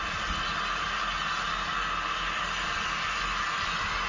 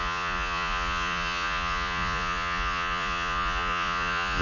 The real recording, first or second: first